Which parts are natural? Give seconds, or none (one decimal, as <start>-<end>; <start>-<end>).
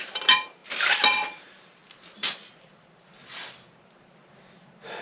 0.6-1.4; 1.8-5.0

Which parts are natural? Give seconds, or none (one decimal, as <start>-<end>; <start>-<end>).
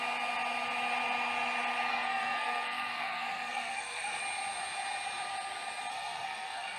0.0-1.9; 4.2-5.9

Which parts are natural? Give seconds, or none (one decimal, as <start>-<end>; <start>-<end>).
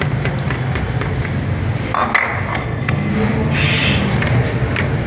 0.0-2.5; 3.1-5.1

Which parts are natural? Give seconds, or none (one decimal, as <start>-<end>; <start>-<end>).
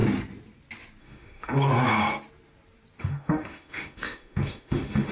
0.0-1.0; 1.7-3.0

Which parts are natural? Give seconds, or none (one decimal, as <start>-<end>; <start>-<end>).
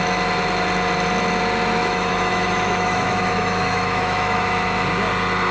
0.0-1.8; 4.8-5.5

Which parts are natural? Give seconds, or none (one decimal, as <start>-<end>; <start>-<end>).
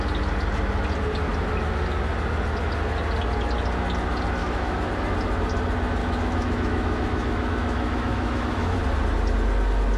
0.0-4.4; 4.9-6.0; 8.8-10.0